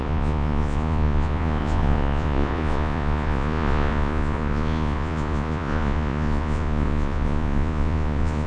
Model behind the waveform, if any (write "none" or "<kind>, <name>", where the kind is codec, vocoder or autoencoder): vocoder, Vocos